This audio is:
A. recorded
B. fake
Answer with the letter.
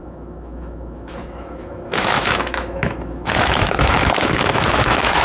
B